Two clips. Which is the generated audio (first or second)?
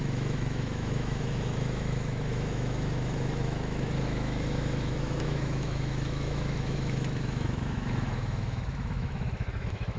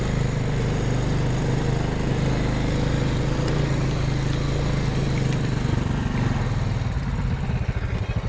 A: first